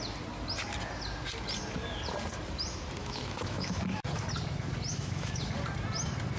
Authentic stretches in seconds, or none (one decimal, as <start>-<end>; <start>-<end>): 0.0-3.0; 3.8-4.9; 5.4-6.4